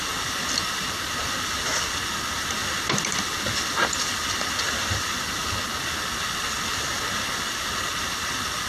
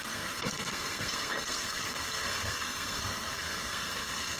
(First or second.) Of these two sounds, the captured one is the first